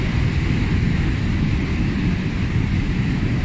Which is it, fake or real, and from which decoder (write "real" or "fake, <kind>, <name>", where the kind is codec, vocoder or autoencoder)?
real